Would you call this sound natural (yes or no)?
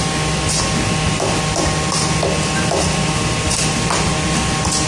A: yes